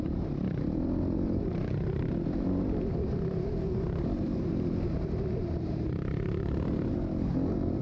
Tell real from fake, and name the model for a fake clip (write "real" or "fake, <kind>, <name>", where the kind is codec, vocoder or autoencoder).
fake, vocoder, BigVGAN v2